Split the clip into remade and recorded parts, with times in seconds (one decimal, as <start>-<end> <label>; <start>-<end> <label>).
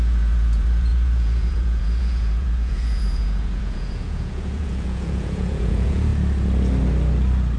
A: 0.0-6.1 remade; 6.1-7.6 recorded